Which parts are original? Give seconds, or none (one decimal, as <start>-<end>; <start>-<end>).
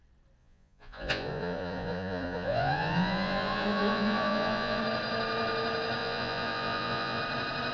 0.0-0.4; 4.8-6.0; 7.2-7.7